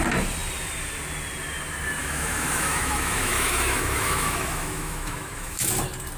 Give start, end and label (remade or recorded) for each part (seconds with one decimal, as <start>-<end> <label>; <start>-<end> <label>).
0.0-2.0 recorded; 2.0-5.7 remade; 5.7-6.2 recorded